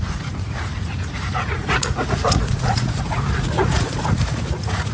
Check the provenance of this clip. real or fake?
fake